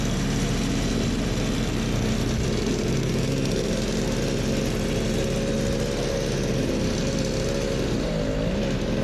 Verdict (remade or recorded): recorded